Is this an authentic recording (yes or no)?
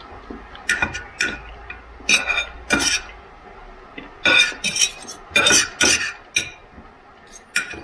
yes